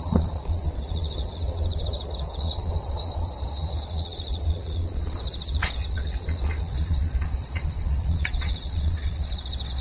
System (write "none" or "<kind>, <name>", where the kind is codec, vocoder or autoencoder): vocoder, Vocos